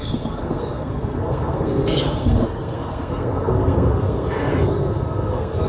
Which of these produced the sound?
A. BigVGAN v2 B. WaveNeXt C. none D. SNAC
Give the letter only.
D